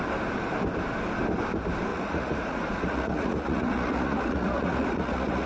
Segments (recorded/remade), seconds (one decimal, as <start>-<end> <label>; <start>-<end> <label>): 0.0-1.9 recorded; 1.9-5.5 remade

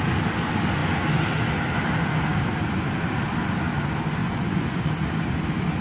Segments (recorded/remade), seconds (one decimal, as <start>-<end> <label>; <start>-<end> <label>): 0.0-4.2 recorded; 4.2-4.9 remade; 4.9-5.8 recorded

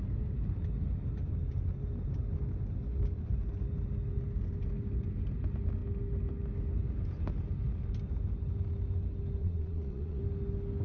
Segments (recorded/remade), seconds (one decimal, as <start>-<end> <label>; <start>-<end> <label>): 0.0-9.4 recorded; 9.4-10.2 remade; 10.2-10.8 recorded

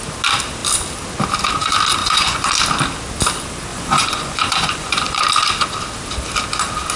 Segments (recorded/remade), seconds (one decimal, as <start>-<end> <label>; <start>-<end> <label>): 0.0-2.0 recorded; 2.0-2.5 remade; 2.5-3.7 recorded; 3.7-5.2 remade; 5.2-7.0 recorded

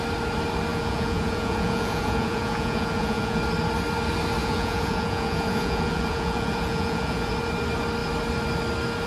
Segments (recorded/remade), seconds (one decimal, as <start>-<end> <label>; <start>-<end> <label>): 0.0-0.7 recorded; 0.7-3.4 remade; 3.4-4.4 recorded; 4.4-7.3 remade; 7.3-9.1 recorded

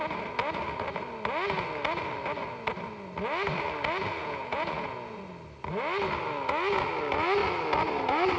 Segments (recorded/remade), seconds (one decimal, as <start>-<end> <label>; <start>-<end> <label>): 0.0-4.2 recorded; 4.2-5.2 remade; 5.2-8.4 recorded